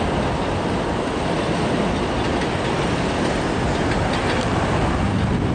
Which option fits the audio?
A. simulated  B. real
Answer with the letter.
B